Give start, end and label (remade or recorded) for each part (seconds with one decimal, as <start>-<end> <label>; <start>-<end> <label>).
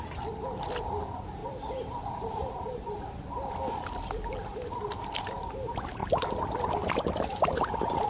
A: 0.0-1.4 recorded; 1.4-3.6 remade; 3.6-8.1 recorded